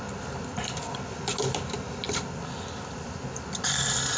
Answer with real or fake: real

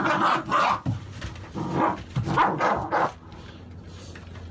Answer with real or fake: real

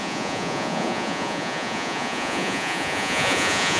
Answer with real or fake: fake